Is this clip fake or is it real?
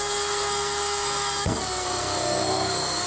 fake